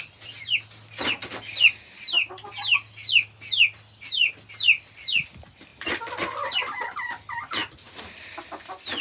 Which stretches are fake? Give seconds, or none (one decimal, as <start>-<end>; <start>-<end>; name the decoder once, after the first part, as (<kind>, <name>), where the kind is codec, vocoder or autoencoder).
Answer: none